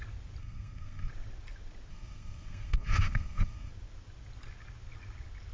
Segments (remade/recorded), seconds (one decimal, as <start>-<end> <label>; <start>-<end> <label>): 0.0-0.4 recorded; 0.4-1.1 remade; 1.1-1.9 recorded; 1.9-3.7 remade; 3.7-5.5 recorded